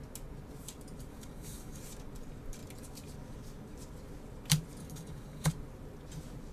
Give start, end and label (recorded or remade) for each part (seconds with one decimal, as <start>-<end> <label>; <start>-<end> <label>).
0.0-1.1 recorded; 1.1-1.8 remade; 1.8-4.8 recorded; 4.8-5.5 remade; 5.5-6.5 recorded